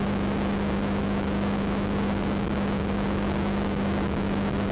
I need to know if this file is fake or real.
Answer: fake